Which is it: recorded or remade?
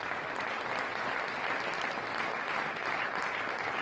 recorded